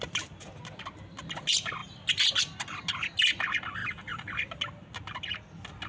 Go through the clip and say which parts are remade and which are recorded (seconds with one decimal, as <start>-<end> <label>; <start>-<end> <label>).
0.0-5.9 recorded